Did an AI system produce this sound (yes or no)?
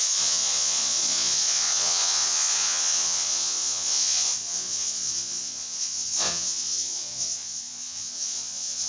yes